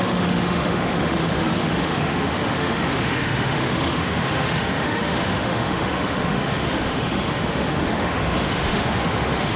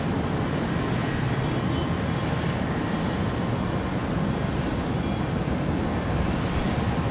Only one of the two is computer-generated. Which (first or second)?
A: first